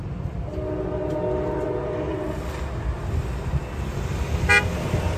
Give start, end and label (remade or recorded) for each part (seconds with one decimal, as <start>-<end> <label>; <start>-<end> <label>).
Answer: 0.0-5.2 recorded